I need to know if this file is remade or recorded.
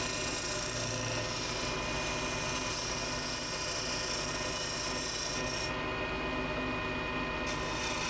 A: recorded